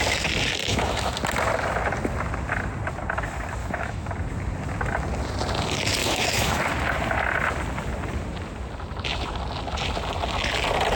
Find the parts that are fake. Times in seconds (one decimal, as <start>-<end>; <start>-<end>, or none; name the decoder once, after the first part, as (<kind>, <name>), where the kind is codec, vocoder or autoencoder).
0.6-1.1 (autoencoder, DAC-VAE); 3.6-4.1; 6.0-6.6